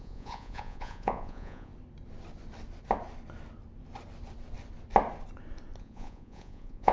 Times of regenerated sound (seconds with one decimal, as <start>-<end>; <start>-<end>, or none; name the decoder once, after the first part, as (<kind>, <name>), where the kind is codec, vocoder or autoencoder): 0.0-1.7 (vocoder, Vocos); 5.8-6.9

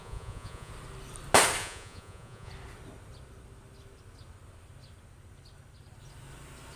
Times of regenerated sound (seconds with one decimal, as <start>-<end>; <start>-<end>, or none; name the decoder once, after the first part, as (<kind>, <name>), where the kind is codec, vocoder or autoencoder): 0.0-0.7 (vocoder, Vocos); 1.6-2.5

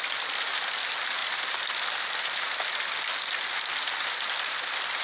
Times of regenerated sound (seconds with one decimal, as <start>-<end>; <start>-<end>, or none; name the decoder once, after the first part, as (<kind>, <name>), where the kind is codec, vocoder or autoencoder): none

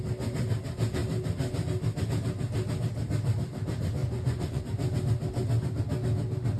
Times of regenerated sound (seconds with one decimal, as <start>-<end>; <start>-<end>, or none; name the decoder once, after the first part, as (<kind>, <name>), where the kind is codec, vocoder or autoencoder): 4.0-4.6 (vocoder, Vocos)